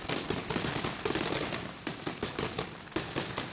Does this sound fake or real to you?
real